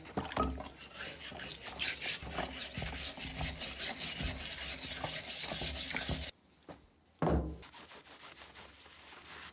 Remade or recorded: recorded